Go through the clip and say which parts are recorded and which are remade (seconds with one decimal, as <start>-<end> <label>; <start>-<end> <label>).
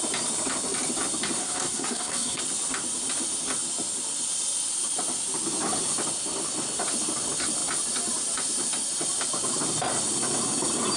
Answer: 0.0-1.4 recorded; 1.4-2.4 remade; 2.4-11.0 recorded